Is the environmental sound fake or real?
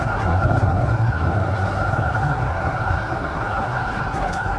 fake